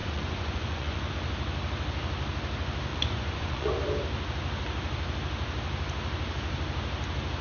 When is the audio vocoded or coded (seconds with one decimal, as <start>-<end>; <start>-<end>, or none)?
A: 0.0-1.1; 2.9-3.7